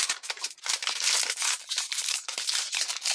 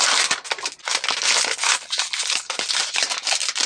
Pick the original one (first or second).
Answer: second